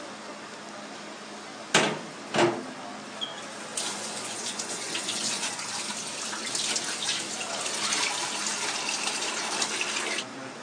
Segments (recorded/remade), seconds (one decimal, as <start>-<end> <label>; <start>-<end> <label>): 0.0-3.7 recorded; 3.7-5.8 remade; 5.8-10.6 recorded